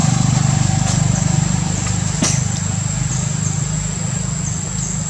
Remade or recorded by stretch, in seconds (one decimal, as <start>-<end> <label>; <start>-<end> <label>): 0.0-5.1 recorded